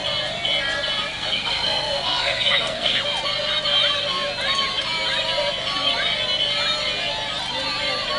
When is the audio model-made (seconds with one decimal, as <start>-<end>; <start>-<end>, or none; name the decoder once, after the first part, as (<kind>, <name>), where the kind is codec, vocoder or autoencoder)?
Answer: 1.1-3.0 (codec, SNAC)